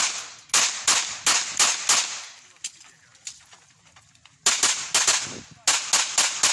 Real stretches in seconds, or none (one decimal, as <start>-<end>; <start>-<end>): 0.0-6.5